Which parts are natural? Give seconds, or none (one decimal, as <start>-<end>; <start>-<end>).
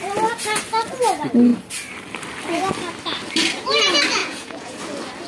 0.0-4.2; 4.8-5.3